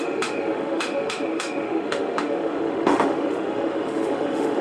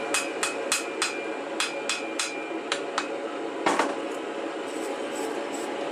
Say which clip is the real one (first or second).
second